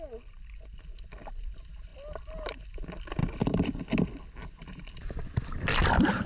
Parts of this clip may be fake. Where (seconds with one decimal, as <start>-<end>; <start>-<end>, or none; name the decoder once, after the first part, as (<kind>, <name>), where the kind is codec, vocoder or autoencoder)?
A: none